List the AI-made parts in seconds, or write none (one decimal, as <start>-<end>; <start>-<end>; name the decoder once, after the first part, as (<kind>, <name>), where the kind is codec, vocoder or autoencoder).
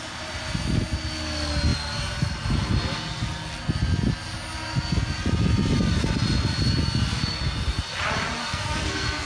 8.4-9.3 (codec, SNAC)